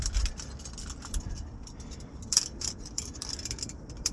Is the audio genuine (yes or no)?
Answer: no